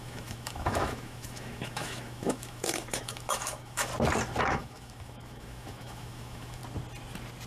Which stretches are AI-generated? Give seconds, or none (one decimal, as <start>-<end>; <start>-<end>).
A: 0.0-3.9; 4.4-6.6

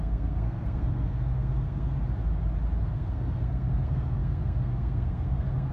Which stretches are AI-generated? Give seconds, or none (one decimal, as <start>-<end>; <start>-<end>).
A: 0.0-2.0; 2.8-5.7

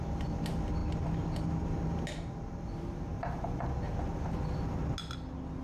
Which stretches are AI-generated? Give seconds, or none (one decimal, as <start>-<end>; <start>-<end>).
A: none

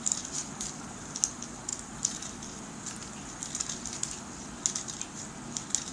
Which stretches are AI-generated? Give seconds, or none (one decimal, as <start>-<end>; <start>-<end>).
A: none

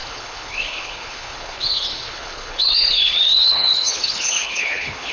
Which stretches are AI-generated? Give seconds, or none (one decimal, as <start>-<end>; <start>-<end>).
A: 0.0-5.1

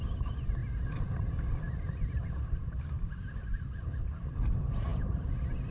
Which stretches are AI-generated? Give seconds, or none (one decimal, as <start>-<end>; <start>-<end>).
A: none